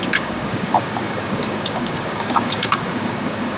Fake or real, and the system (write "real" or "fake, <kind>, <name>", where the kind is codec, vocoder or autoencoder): fake, codec, DAC